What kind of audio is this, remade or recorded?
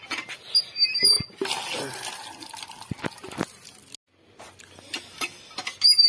recorded